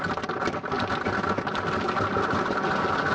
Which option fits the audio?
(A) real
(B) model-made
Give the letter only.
A